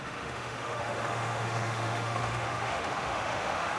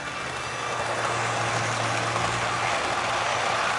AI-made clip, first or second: first